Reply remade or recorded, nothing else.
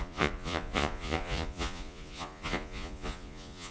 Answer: remade